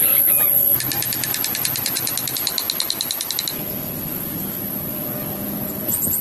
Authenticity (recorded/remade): recorded